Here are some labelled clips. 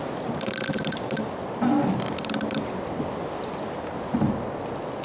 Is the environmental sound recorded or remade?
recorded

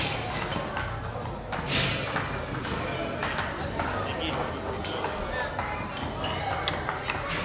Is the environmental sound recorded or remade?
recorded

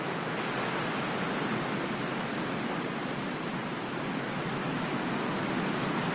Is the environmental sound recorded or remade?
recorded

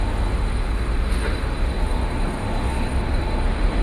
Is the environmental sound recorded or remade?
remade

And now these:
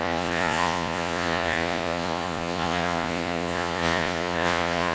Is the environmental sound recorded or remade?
remade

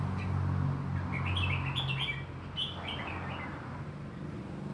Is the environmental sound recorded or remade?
recorded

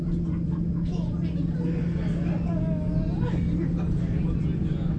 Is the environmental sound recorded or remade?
recorded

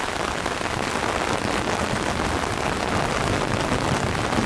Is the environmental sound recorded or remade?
recorded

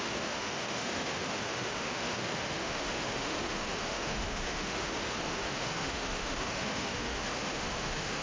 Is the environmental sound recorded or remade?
remade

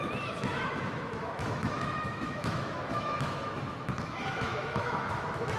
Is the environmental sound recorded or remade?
remade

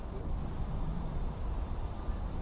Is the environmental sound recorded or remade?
recorded